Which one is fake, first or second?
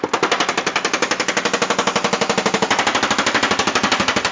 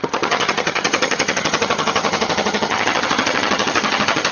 second